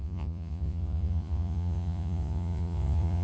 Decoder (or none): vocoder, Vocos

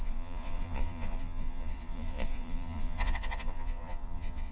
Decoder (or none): vocoder, Vocos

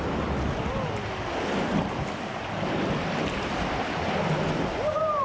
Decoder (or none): none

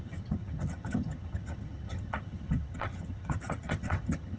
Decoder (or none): vocoder, HiFi-GAN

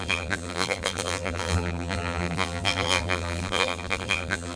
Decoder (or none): vocoder, BigVGAN v2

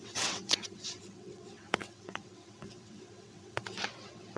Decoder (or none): vocoder, WaveNeXt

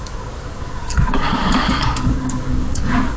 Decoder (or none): codec, DAC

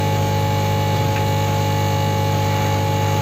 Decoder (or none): none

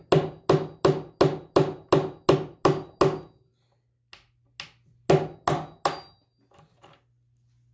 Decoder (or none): none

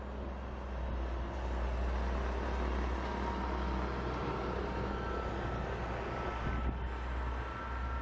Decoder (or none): none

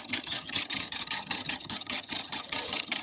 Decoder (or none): vocoder, HiFi-GAN